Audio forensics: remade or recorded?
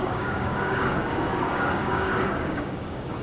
remade